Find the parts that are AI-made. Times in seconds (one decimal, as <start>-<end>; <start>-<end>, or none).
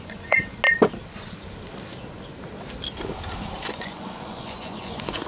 0.0-0.5; 3.7-5.3